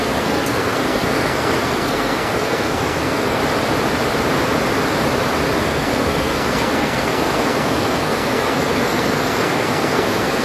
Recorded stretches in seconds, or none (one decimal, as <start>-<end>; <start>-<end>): 3.4-5.6